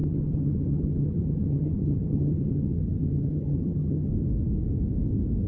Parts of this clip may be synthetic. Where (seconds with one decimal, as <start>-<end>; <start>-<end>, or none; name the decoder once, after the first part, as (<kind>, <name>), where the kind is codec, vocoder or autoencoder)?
0.0-4.1 (vocoder, HiFi-GAN)